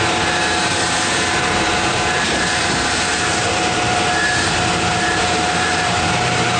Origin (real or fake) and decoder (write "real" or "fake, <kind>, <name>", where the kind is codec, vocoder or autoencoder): fake, vocoder, BigVGAN v2